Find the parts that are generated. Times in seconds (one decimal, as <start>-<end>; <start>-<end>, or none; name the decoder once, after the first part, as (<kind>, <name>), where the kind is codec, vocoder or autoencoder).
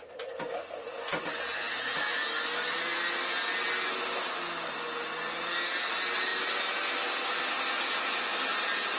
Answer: none